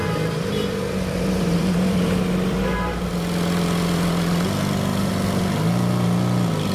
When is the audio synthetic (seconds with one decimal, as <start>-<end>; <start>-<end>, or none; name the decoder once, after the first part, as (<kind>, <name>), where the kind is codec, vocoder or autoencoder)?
0.0-3.0 (vocoder, BigVGAN v2); 4.9-5.4